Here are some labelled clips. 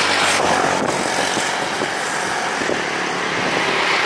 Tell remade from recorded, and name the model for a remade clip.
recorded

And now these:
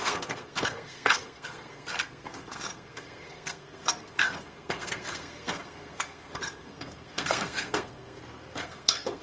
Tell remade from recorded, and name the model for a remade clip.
remade, codec, SNAC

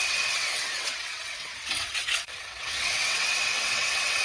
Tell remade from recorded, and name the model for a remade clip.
remade, vocoder, WaveNeXt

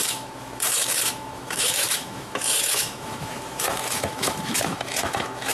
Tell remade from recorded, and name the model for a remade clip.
remade, autoencoder, DAC-VAE